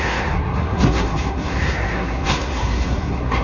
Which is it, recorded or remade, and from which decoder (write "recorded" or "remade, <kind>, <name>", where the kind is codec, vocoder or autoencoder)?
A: remade, codec, SNAC